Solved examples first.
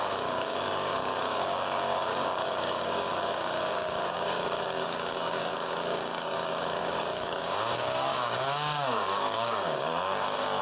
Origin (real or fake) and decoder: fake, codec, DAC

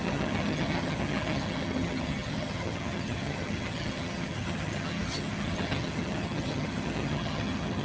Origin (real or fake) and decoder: fake, vocoder, HiFi-GAN